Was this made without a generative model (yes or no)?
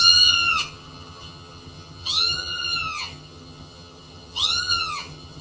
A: no